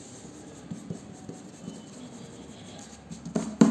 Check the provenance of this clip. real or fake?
real